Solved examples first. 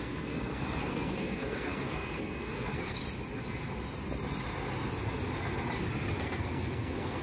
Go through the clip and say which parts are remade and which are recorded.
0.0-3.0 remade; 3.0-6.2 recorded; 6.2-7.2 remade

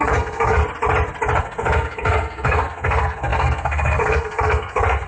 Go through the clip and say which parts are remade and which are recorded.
0.0-0.6 remade; 0.6-1.4 recorded; 1.4-5.1 remade